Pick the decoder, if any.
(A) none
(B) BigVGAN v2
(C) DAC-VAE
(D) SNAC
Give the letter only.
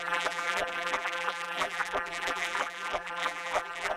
B